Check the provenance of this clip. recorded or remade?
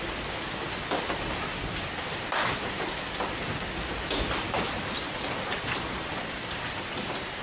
recorded